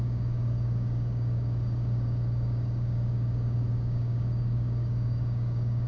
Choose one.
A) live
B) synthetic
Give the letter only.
B